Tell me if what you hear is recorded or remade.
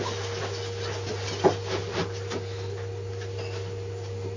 recorded